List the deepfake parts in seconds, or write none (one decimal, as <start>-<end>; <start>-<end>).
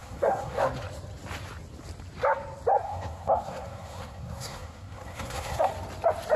0.0-0.6; 2.8-5.7